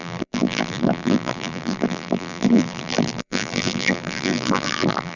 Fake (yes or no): yes